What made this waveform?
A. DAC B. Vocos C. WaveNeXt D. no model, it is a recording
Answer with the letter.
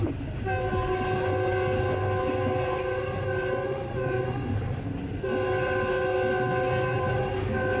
D